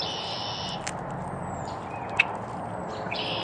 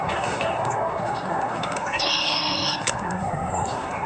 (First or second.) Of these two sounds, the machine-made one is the second